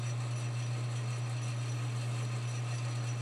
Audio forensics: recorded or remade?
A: recorded